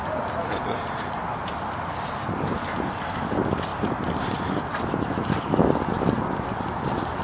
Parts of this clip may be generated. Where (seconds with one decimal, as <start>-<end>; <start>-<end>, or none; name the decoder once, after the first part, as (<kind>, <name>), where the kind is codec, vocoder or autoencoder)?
none